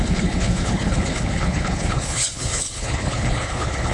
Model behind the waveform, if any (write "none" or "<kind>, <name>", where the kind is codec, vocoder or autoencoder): codec, HILCodec